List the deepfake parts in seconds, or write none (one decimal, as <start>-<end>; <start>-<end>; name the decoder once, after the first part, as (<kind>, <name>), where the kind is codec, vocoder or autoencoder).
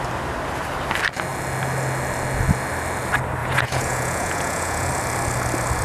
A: 3.4-4.9 (vocoder, Vocos)